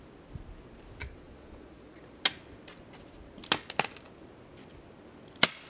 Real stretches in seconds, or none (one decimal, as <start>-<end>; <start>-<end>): 0.0-1.0; 2.2-5.7